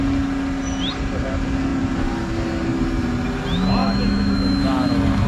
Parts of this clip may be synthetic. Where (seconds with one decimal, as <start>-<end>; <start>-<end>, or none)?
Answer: 3.8-4.6